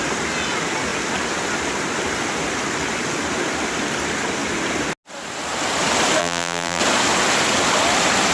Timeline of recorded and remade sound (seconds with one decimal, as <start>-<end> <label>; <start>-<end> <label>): 0.0-6.2 recorded; 6.2-6.8 remade; 6.8-8.3 recorded